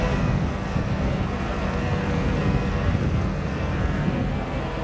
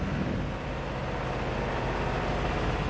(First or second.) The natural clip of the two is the second